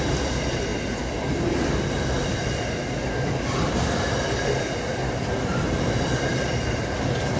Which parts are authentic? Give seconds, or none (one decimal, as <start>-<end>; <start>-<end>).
0.0-7.4